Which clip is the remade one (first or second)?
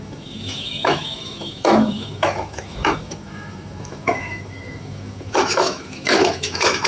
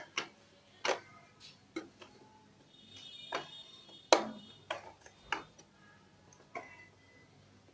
first